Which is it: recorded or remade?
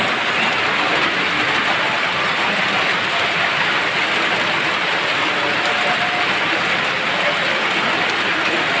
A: recorded